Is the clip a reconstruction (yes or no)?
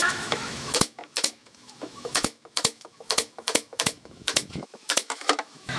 yes